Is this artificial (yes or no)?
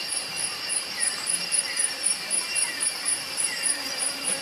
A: yes